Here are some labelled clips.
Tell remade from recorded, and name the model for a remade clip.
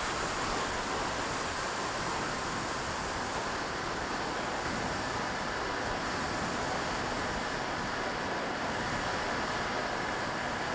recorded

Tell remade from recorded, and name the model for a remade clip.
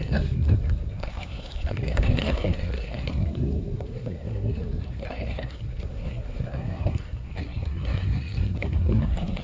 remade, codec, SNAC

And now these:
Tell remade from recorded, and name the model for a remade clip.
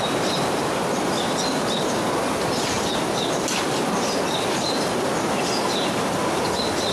recorded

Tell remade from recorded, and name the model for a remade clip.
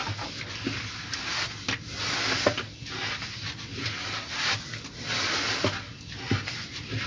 recorded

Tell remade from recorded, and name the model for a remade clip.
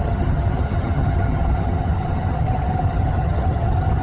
remade, vocoder, HiFi-GAN